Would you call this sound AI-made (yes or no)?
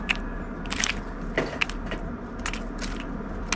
no